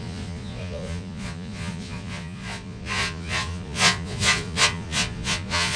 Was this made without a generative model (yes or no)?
no